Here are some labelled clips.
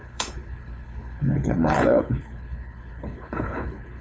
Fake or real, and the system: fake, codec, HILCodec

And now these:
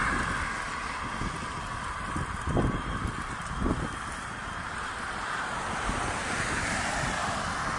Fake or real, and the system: real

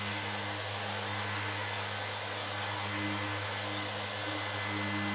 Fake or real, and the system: real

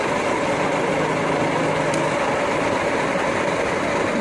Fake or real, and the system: real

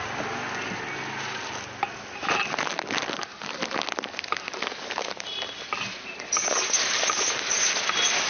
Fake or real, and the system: real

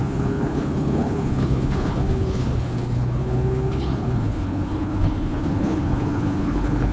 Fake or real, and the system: fake, codec, HILCodec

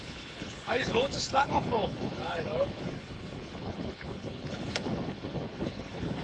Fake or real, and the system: fake, codec, HILCodec